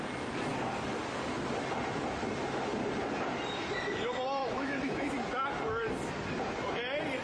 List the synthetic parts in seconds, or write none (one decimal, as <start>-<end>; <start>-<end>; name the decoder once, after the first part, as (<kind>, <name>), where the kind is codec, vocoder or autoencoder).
4.4-5.1 (autoencoder, DAC-VAE)